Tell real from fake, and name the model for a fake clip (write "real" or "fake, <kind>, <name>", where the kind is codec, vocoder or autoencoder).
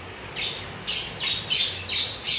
real